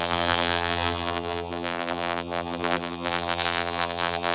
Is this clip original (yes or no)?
no